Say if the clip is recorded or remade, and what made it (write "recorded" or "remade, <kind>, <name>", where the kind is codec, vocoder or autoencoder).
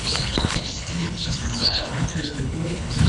remade, codec, HILCodec